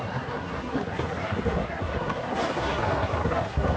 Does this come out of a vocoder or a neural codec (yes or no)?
yes